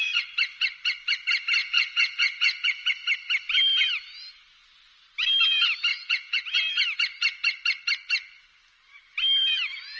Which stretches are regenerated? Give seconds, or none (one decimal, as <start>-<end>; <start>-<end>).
1.6-2.9; 5.9-6.4